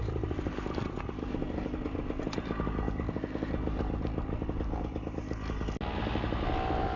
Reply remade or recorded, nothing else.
recorded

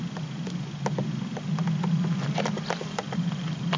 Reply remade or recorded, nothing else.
recorded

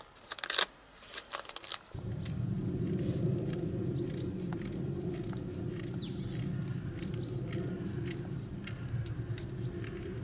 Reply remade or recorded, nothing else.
recorded